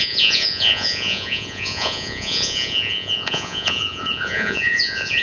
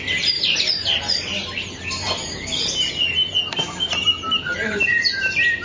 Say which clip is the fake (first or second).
first